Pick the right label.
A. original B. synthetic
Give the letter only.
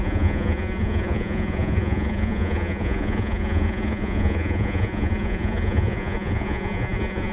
B